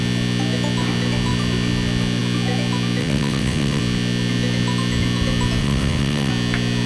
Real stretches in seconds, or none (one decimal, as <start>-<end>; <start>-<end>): 0.0-3.0; 3.8-5.6; 6.3-6.9